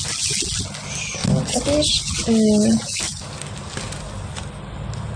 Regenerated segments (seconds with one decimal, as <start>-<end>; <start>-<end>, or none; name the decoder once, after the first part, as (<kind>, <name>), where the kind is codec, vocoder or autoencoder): none